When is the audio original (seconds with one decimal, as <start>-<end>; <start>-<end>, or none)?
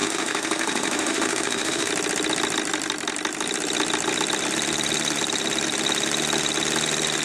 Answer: 1.9-7.2